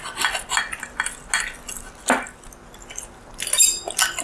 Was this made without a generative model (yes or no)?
yes